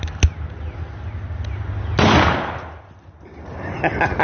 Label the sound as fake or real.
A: real